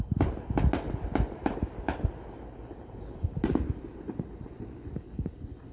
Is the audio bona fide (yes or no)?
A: yes